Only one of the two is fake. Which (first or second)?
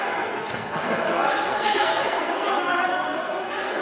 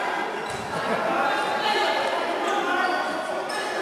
first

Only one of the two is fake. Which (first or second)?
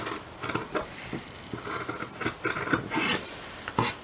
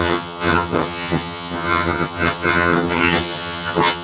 second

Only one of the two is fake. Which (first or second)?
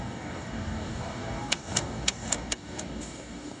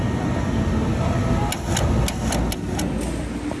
first